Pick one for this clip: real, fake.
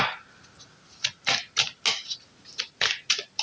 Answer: real